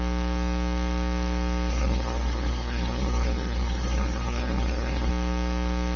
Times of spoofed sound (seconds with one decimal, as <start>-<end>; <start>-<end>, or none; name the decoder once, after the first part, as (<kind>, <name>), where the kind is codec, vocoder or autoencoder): 1.7-5.1 (codec, SNAC)